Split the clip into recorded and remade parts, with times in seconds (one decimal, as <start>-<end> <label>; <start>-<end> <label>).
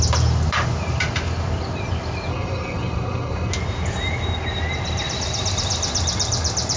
0.0-2.3 recorded; 2.3-3.5 remade; 3.5-6.8 recorded